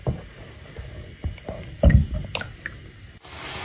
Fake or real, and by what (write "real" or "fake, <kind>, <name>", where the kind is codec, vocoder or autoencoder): real